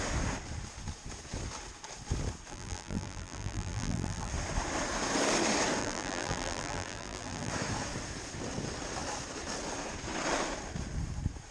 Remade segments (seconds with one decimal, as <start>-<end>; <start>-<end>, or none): 2.5-4.3; 5.8-7.5